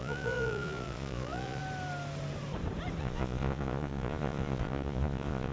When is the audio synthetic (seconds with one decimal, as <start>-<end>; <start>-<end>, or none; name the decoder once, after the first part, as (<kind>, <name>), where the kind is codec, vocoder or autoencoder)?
0.0-1.6 (vocoder, Vocos); 3.0-5.5